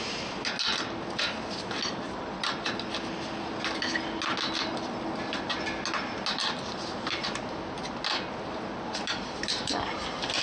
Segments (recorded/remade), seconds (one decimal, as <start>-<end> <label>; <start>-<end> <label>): 0.0-10.4 recorded